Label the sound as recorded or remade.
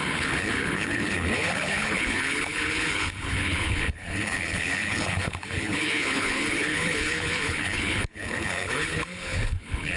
remade